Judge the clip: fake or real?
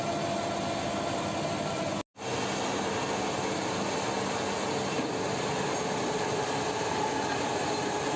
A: real